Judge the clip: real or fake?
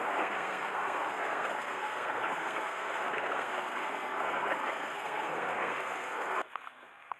fake